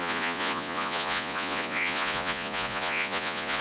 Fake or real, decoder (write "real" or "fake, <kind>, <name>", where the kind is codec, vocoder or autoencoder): fake, vocoder, Vocos